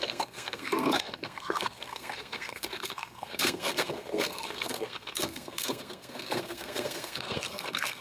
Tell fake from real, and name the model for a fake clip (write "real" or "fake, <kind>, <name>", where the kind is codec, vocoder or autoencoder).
fake, codec, SNAC